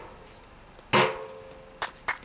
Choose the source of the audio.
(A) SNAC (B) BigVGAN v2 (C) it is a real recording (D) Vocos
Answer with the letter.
C